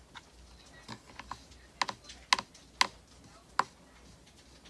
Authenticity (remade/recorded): recorded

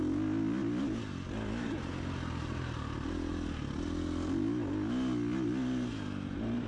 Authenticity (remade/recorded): recorded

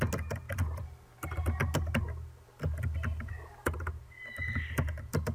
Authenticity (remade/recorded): recorded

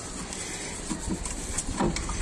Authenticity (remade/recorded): recorded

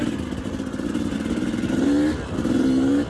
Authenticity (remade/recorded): recorded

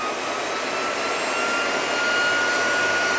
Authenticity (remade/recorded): recorded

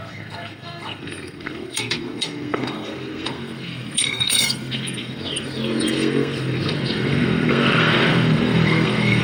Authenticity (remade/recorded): remade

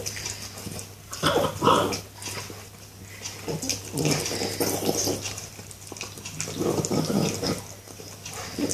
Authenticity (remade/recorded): recorded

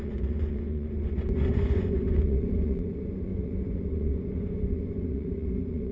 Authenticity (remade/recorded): remade